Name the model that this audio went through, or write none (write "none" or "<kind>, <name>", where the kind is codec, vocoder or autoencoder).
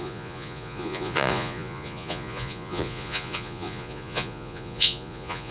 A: vocoder, Vocos